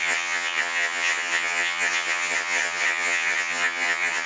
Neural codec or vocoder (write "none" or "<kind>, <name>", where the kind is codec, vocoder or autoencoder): vocoder, HiFi-GAN